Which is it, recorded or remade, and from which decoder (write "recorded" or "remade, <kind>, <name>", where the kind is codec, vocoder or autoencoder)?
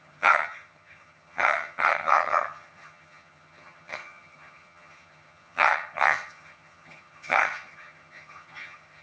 remade, vocoder, HiFi-GAN